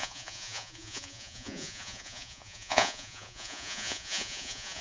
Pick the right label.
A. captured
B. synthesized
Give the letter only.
B